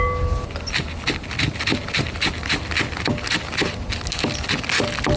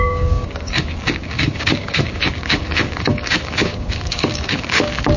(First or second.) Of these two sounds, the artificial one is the second